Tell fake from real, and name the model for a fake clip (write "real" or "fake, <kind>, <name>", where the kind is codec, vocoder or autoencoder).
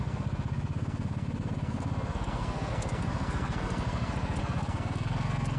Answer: fake, codec, SNAC